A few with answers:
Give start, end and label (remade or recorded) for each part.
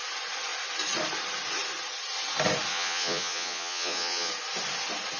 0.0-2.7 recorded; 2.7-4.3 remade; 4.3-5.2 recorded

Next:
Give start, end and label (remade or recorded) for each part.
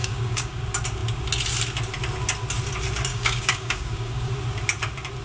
0.0-0.6 remade; 0.6-3.1 recorded; 3.1-4.3 remade; 4.3-5.2 recorded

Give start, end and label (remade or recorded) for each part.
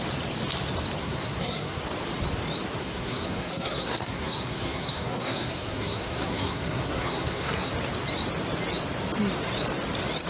0.0-1.0 recorded; 1.0-1.8 remade; 1.8-2.8 recorded; 2.8-7.7 remade; 7.7-10.3 recorded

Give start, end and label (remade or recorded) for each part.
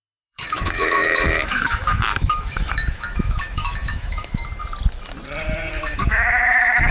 0.0-4.5 remade; 4.5-5.7 recorded; 5.7-6.9 remade